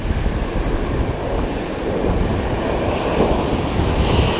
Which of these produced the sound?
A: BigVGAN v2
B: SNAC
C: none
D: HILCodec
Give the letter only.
C